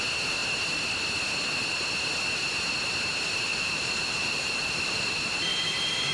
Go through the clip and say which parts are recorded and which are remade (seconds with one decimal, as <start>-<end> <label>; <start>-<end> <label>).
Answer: 0.0-3.5 recorded; 3.5-5.0 remade; 5.0-6.1 recorded